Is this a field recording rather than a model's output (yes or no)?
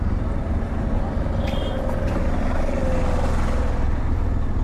yes